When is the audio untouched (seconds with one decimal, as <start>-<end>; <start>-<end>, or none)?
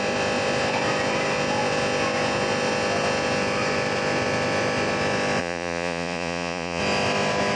0.0-5.4; 6.8-7.6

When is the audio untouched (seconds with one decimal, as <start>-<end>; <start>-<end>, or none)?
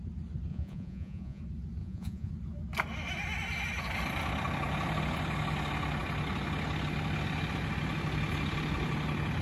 0.0-0.5; 1.4-1.8; 2.3-9.4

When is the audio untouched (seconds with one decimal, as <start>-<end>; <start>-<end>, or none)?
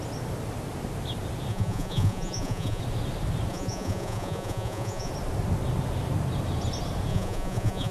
0.0-1.5; 2.8-3.5; 5.1-7.1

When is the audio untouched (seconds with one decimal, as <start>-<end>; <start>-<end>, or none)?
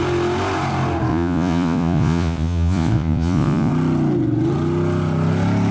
0.0-1.1; 3.7-5.7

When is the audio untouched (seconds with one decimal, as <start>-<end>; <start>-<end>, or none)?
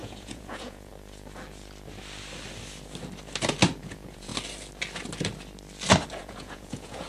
0.9-3.8; 4.3-6.1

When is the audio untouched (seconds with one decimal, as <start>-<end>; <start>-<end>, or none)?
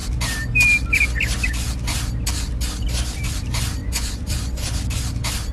0.0-3.8; 4.8-5.5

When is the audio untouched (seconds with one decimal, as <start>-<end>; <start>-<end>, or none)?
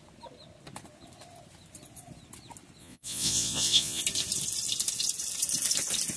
0.0-2.8; 4.0-6.2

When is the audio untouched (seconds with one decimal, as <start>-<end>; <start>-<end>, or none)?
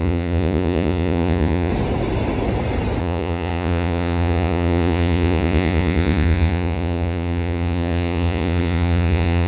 1.7-3.0